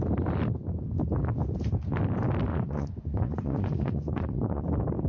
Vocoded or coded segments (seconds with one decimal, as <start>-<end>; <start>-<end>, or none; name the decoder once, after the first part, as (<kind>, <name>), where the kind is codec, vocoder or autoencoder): 2.5-4.6 (vocoder, Vocos)